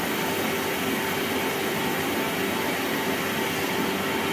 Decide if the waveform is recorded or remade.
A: recorded